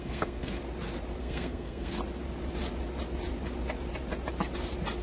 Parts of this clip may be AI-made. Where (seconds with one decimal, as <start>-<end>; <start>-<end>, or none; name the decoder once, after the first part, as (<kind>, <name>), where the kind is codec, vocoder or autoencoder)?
0.0-0.6 (codec, SNAC); 1.2-2.0

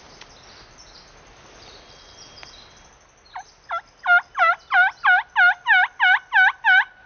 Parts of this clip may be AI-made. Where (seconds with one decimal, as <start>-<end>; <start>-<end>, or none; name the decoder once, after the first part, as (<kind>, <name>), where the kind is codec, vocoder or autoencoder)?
none

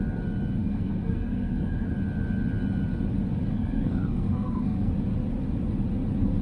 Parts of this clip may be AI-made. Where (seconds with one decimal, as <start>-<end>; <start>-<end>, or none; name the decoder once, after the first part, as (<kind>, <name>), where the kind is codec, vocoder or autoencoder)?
0.6-1.9 (codec, SNAC); 3.5-4.9

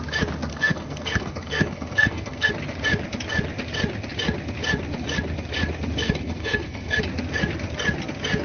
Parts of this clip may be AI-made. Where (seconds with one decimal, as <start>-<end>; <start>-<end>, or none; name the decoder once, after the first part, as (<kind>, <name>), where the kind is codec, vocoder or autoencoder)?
0.5-2.5 (codec, SNAC); 6.0-7.0

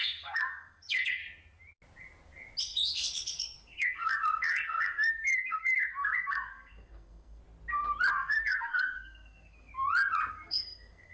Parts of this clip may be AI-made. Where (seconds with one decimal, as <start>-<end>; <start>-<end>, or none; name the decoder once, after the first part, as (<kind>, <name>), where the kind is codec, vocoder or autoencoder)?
0.0-1.2 (codec, SNAC); 2.6-7.4; 8.1-9.7; 10.3-11.1

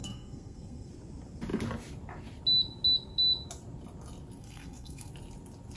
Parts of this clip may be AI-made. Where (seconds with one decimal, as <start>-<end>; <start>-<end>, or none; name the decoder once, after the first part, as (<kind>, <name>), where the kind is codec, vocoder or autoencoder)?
0.0-0.9 (codec, SNAC); 4.4-5.1